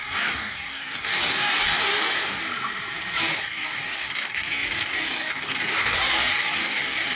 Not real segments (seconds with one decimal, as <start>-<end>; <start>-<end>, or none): 0.0-2.4; 3.2-7.2